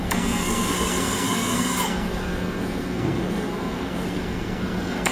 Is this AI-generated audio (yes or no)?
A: yes